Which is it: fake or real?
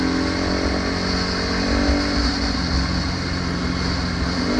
real